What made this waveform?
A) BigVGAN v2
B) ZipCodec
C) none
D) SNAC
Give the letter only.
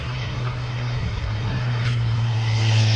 D